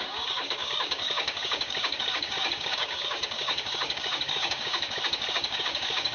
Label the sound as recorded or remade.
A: remade